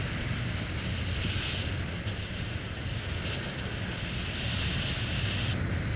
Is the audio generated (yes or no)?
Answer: no